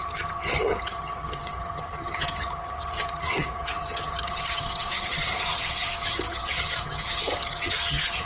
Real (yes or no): no